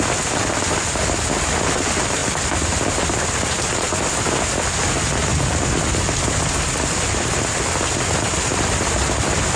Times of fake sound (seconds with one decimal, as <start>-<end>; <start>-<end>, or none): none